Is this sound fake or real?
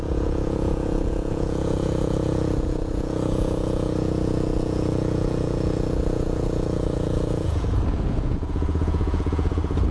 fake